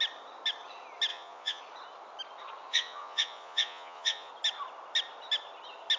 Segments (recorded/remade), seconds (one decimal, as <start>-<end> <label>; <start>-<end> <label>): 0.0-1.1 recorded; 1.1-1.6 remade; 1.6-2.7 recorded; 2.7-4.3 remade; 4.3-6.0 recorded